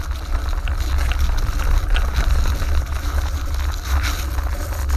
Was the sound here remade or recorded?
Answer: recorded